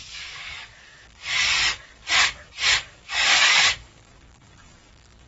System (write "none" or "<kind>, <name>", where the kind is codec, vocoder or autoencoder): codec, DAC